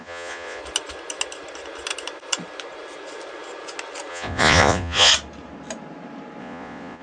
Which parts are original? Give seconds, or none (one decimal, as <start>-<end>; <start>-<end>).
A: 0.6-4.1; 5.1-6.4